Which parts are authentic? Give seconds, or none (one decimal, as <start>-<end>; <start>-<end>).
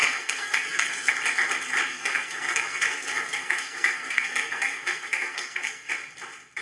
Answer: 1.1-1.9; 5.9-6.6